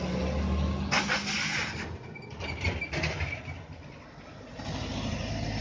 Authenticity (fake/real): real